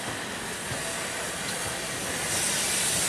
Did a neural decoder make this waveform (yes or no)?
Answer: no